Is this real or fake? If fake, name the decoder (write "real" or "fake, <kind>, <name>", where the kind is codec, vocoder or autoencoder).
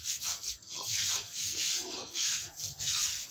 fake, codec, SNAC